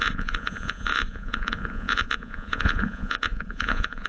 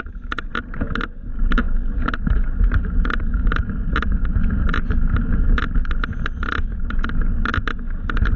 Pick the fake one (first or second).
first